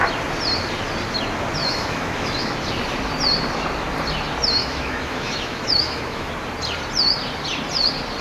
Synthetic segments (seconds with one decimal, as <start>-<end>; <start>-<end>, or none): 1.6-2.5; 4.6-6.3